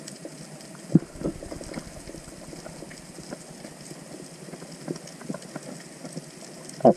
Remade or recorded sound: recorded